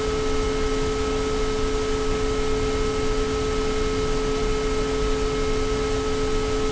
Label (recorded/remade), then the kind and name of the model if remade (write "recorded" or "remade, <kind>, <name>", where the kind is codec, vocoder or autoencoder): recorded